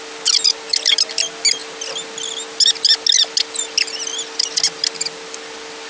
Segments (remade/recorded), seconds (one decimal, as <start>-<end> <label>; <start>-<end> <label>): 0.0-5.9 recorded